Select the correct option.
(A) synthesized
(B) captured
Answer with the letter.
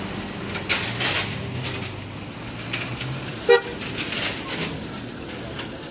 B